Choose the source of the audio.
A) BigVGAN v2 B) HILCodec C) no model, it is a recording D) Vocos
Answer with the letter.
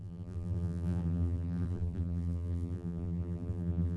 A